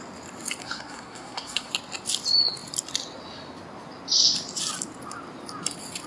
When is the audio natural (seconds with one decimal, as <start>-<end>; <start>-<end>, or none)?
0.0-0.6; 1.7-6.1